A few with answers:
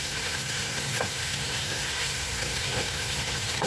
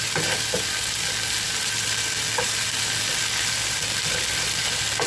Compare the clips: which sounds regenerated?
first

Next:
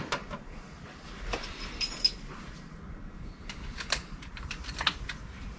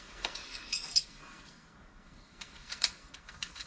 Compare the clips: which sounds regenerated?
second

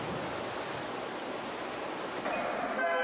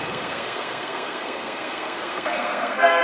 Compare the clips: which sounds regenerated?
second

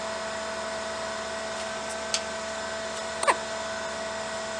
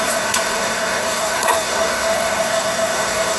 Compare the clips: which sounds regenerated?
second